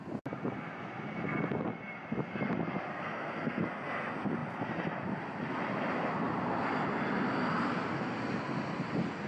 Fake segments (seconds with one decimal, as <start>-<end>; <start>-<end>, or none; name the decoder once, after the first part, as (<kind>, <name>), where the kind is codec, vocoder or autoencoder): 2.9-3.6 (codec, SNAC)

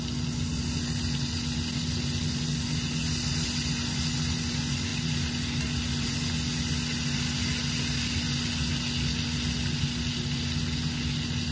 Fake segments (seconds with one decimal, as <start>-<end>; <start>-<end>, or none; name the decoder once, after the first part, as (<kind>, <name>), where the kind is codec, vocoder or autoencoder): none

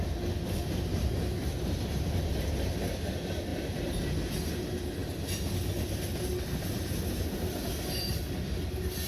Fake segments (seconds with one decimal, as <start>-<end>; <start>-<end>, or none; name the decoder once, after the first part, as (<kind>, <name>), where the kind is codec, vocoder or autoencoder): none

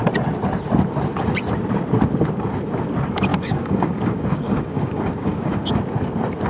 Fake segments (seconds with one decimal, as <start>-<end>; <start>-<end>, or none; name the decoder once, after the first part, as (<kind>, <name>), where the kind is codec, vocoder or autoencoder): 3.3-5.7 (codec, DAC)

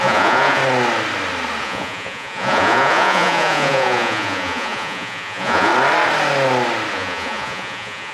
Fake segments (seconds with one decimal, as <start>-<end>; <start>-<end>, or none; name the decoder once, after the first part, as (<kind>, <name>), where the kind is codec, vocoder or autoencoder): 0.0-0.6 (vocoder, Vocos); 1.6-5.7; 6.9-8.1

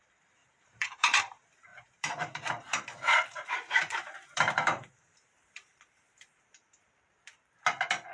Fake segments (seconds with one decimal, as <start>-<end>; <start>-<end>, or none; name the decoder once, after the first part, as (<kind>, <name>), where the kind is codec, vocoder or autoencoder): 0.4-1.2 (vocoder, BigVGAN v2); 1.7-6.4

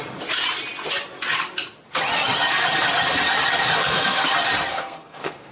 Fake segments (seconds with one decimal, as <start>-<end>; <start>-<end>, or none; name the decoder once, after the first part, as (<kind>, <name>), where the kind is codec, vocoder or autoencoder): 3.8-4.3 (codec, SNAC); 4.7-5.5

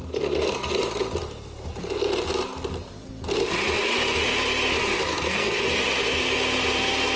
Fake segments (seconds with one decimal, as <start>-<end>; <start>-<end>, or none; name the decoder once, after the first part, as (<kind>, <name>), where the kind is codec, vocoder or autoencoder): 5.1-5.6 (codec, SNAC)